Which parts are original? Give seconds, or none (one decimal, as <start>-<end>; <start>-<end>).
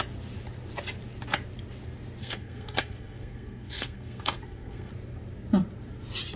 0.0-2.2; 4.9-6.4